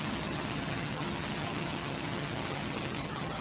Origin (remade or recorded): remade